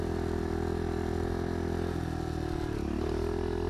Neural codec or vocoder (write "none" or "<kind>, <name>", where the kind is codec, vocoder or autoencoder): none